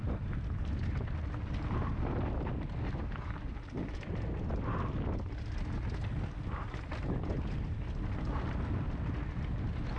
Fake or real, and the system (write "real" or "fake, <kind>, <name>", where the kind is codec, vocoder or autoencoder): real